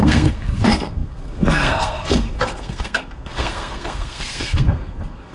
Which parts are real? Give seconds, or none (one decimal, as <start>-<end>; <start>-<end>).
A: none